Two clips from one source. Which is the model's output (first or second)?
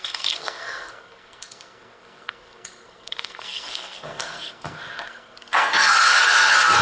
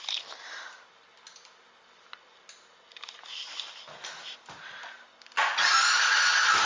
first